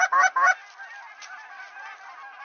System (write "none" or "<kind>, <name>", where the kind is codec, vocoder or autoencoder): none